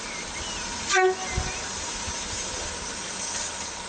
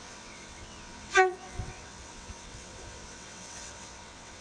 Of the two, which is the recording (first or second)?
first